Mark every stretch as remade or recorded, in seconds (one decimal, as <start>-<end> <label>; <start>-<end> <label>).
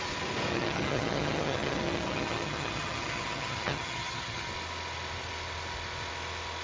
0.0-0.5 recorded; 0.5-4.5 remade; 4.5-6.6 recorded